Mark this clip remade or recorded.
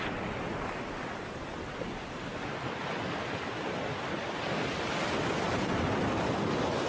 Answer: recorded